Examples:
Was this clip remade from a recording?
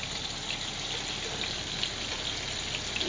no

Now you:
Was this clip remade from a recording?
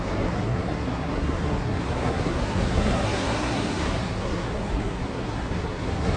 yes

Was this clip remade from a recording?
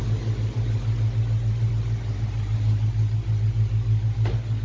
no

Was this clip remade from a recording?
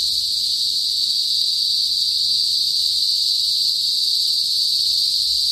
no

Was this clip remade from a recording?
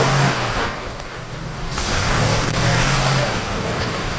yes